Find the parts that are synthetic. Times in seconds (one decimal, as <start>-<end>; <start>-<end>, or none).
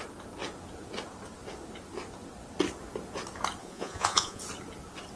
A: 3.6-4.4